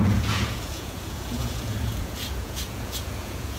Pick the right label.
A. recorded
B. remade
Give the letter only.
B